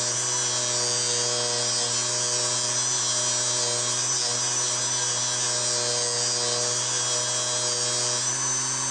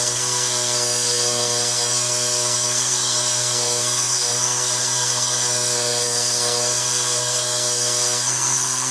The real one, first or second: first